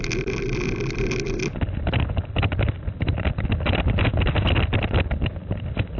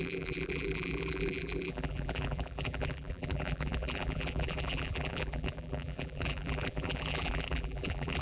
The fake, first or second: second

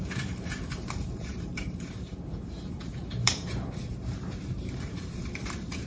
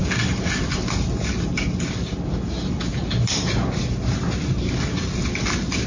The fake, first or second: first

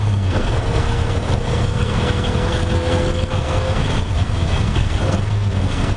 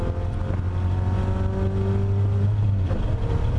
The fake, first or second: first